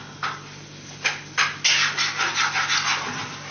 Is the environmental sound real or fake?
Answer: real